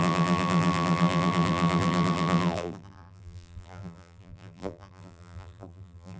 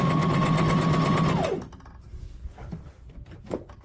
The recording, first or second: second